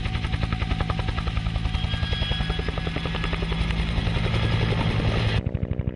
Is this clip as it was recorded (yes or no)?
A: yes